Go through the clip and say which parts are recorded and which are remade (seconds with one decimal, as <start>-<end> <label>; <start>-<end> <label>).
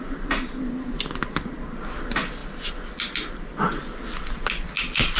0.0-5.2 recorded